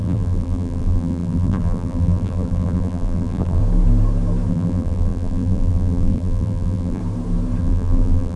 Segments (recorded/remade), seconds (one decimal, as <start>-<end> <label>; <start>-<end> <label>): 0.0-3.6 remade; 3.6-4.5 recorded; 4.5-7.0 remade; 7.0-7.6 recorded; 7.6-8.4 remade